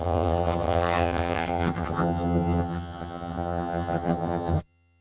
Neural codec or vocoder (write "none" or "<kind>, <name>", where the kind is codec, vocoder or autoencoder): vocoder, HiFi-GAN